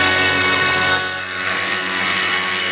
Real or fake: fake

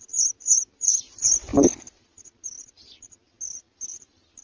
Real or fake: real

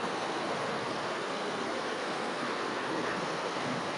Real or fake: fake